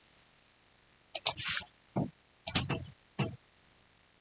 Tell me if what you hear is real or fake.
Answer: fake